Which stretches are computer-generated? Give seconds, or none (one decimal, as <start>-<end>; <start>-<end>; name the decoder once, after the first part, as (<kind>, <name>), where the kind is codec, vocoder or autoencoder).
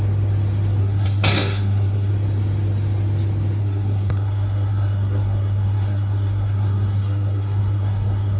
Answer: 0.8-2.1 (codec, SNAC); 3.6-8.4